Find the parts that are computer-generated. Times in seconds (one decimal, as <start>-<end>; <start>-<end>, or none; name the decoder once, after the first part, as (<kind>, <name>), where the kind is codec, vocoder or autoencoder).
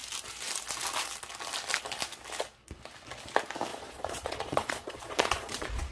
3.7-5.9 (vocoder, Vocos)